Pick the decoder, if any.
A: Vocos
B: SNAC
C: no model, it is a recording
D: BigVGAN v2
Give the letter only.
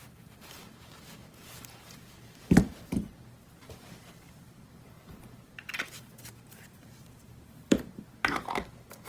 D